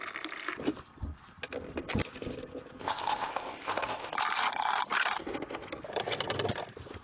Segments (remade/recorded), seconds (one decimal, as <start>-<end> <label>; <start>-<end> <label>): 0.0-2.8 recorded; 2.8-4.1 remade; 4.1-7.0 recorded